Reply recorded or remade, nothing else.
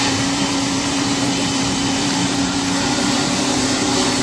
remade